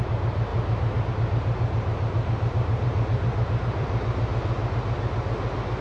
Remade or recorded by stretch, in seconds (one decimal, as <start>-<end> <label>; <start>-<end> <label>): 0.0-4.3 remade; 4.3-5.8 recorded